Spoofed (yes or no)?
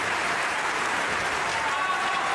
yes